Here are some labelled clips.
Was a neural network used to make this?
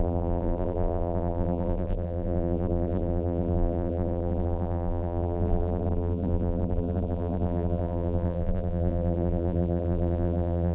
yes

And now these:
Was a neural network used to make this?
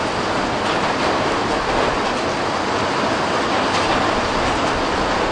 no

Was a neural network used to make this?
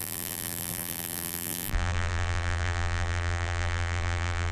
yes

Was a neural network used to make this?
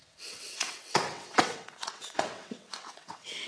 yes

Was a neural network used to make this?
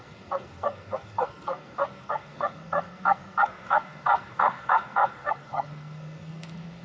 yes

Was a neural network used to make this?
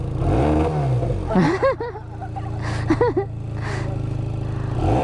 no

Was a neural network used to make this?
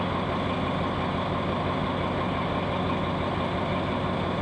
no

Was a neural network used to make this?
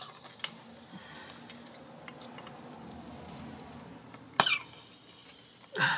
no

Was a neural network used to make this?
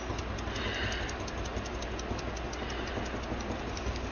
no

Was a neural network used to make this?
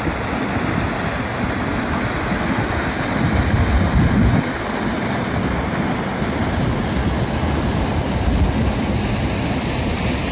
no